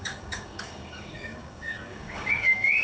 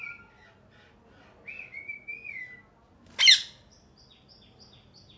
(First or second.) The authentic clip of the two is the second